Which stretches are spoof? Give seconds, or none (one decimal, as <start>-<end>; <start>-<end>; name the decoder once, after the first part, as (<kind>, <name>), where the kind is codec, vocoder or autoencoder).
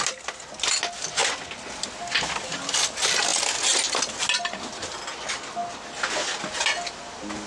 none